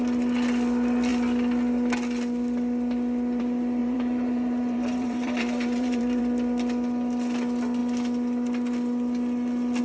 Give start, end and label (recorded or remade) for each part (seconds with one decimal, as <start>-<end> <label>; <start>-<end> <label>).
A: 0.0-3.8 recorded; 3.8-6.2 remade; 6.2-9.8 recorded